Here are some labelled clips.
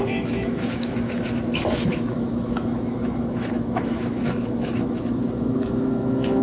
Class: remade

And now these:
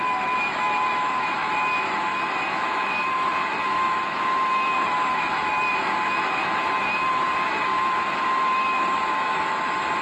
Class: remade